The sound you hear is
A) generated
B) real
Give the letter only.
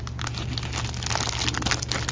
B